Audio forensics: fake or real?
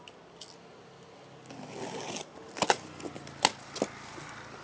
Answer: real